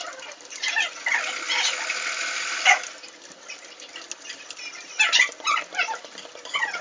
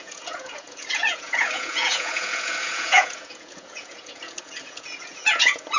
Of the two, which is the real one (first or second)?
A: first